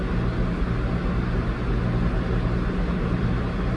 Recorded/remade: recorded